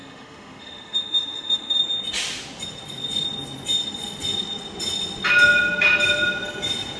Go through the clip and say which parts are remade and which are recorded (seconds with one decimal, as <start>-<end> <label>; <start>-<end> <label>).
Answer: 0.0-1.8 remade; 1.8-7.0 recorded